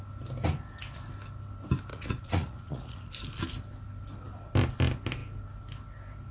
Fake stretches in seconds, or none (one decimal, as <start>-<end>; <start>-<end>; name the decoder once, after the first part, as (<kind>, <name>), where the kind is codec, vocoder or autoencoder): 1.9-3.1 (vocoder, Vocos)

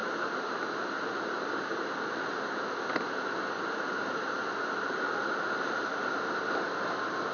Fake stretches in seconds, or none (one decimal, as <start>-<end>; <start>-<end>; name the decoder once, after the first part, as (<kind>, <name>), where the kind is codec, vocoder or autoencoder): none

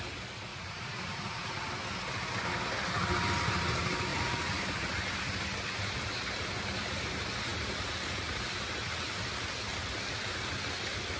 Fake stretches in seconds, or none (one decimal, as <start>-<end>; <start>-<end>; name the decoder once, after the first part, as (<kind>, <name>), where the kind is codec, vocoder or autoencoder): 0.5-1.7 (vocoder, Vocos); 4.1-4.6